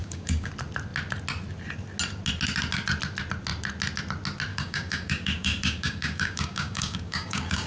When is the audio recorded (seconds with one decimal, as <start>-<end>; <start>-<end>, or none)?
0.5-4.5